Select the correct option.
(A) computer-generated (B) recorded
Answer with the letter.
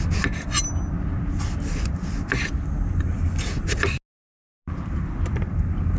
B